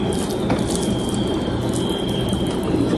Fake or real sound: real